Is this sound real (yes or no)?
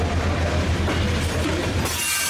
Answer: yes